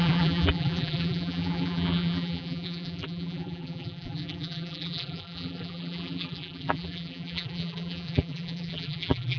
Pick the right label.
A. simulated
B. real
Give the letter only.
A